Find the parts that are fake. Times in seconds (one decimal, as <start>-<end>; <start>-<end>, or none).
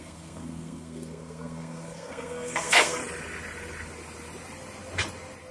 0.0-3.0